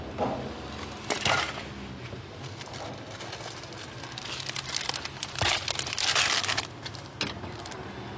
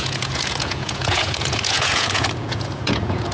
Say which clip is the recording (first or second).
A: first